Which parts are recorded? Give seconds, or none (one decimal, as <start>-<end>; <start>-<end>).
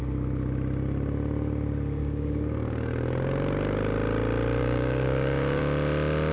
0.0-2.0; 2.9-4.6; 5.6-6.3